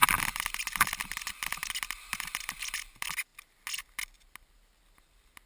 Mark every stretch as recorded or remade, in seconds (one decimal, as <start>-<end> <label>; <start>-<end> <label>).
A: 0.0-1.0 remade; 1.0-2.1 recorded; 2.1-2.9 remade; 2.9-5.5 recorded